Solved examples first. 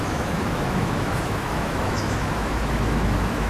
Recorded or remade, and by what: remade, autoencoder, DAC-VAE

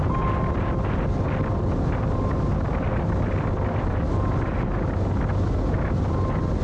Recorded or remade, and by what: recorded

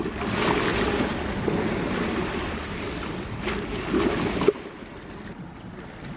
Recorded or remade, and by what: recorded